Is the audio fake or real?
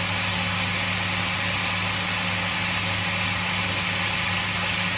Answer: real